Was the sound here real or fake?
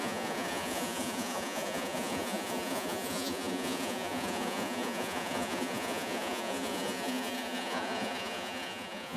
fake